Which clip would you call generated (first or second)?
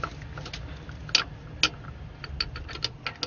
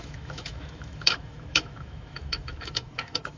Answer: second